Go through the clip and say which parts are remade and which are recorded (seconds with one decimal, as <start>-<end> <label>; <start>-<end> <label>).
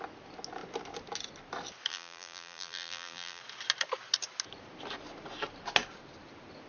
0.0-1.9 recorded; 1.9-3.4 remade; 3.4-6.7 recorded